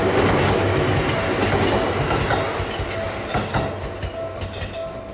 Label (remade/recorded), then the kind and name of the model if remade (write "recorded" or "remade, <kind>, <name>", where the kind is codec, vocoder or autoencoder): recorded